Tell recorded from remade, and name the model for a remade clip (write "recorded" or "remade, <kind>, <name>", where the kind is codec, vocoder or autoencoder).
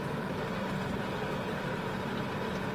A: recorded